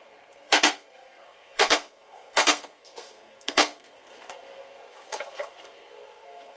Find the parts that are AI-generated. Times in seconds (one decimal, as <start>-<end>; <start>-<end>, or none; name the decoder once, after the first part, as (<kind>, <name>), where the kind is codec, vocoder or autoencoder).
0.0-6.6 (codec, SNAC)